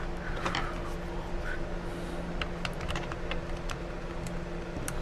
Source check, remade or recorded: recorded